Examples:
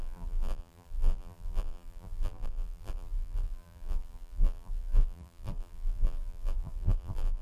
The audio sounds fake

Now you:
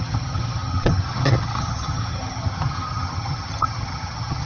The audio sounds fake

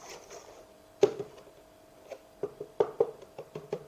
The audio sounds fake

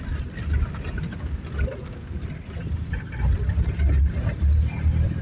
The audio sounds real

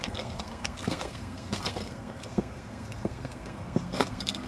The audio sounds fake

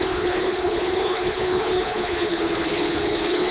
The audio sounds fake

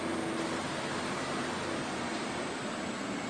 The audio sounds real